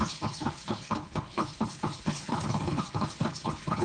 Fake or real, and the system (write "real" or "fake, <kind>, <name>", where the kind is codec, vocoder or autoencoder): fake, codec, HILCodec